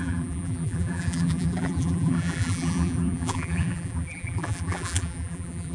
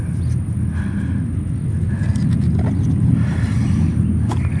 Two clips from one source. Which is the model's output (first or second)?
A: first